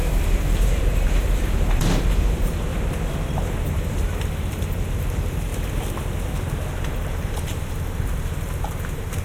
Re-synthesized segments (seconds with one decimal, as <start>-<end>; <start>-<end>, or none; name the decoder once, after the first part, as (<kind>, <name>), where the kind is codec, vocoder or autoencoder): 0.0-2.7 (vocoder, BigVGAN v2); 3.7-5.5; 6.7-9.2